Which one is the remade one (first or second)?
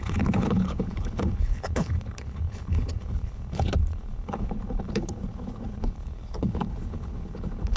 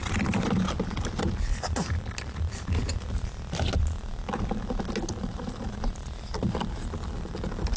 first